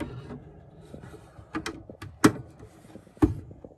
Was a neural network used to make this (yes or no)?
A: no